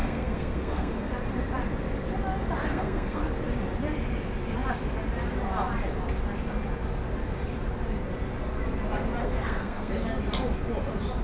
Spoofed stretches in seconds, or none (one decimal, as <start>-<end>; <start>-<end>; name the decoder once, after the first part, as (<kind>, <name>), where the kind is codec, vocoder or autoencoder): 0.0-1.1 (codec, SNAC); 2.7-3.2; 9.2-9.9

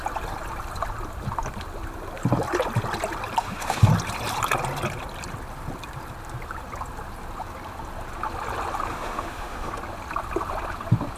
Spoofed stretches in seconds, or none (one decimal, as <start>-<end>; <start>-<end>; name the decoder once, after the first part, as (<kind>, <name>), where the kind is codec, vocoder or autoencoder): 3.4-3.9 (autoencoder, DAC-VAE); 8.9-9.7

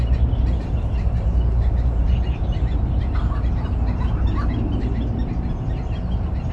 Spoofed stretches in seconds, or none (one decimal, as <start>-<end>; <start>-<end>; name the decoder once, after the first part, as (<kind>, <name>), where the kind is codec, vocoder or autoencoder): none